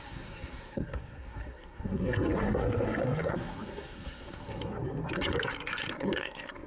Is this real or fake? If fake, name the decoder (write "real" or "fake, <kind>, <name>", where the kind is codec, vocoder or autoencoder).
fake, codec, SNAC